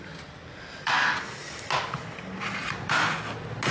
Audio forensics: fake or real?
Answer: real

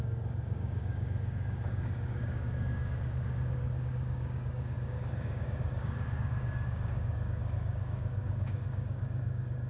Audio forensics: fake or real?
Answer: fake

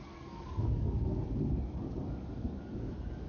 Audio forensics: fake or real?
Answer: fake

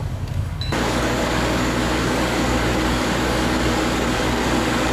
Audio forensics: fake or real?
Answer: fake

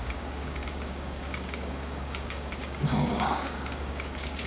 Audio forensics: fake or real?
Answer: fake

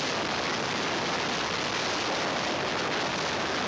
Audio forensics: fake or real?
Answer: real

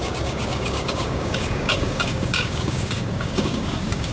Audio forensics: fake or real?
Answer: fake